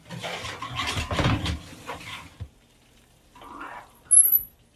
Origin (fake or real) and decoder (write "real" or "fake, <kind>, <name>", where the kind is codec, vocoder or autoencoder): real